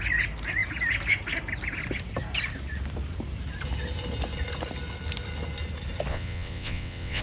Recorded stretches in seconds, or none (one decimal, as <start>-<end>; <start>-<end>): 0.0-6.1